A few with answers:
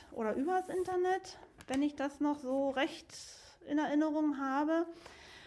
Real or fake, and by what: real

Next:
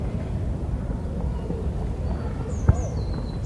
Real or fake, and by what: real